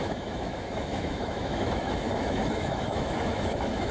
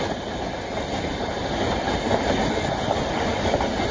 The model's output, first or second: first